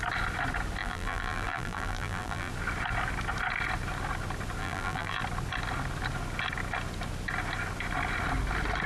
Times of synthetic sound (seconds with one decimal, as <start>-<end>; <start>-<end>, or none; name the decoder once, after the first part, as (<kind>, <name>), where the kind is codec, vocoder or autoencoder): 0.8-2.5 (vocoder, BigVGAN v2); 4.6-5.2